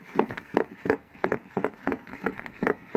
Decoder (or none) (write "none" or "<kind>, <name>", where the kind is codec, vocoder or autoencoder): codec, SNAC